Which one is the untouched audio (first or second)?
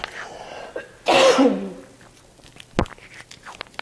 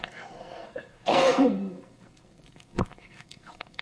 first